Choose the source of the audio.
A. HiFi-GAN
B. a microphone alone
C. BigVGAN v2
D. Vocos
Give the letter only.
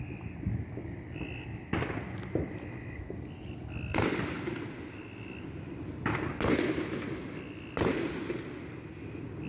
B